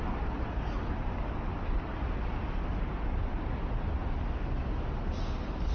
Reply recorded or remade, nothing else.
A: recorded